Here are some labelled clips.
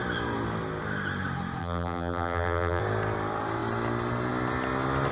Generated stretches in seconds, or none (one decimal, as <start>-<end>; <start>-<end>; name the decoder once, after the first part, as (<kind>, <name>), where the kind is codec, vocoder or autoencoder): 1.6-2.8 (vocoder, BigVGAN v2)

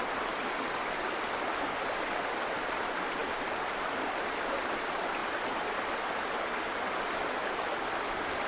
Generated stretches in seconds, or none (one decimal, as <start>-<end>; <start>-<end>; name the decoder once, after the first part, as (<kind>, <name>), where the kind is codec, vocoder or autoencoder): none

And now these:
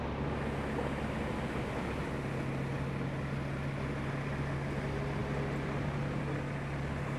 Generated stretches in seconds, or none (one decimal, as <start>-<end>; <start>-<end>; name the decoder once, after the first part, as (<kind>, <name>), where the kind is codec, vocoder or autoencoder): none